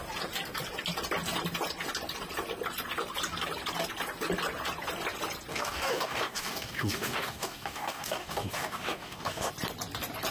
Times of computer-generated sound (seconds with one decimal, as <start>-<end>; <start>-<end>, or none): 5.5-9.5